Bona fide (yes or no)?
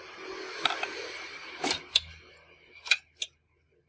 yes